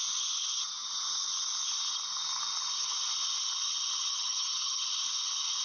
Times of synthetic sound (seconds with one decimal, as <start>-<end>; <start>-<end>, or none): 4.1-4.8